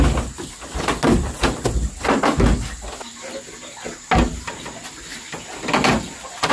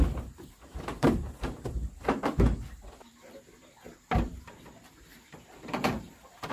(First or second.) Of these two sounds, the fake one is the second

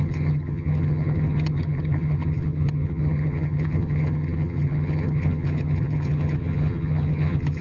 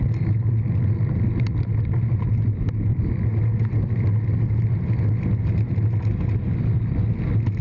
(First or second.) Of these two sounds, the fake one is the first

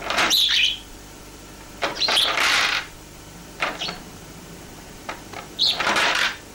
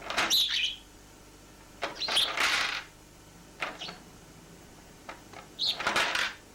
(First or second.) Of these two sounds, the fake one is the first